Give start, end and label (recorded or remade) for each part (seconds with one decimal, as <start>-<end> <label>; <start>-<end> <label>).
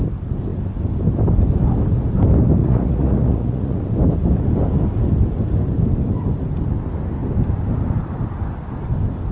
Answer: 0.0-2.6 recorded; 2.6-3.8 remade; 3.8-9.3 recorded